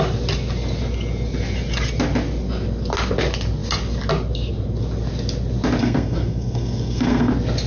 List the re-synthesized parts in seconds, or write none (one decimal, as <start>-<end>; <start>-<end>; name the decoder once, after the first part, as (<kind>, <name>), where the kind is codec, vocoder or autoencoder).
5.8-7.3 (codec, SNAC)